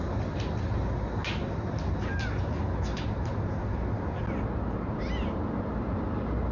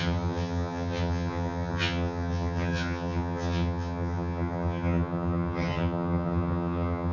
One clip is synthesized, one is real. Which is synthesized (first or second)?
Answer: second